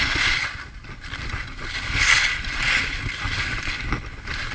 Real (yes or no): yes